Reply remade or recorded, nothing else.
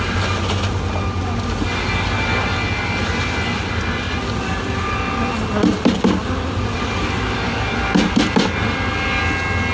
recorded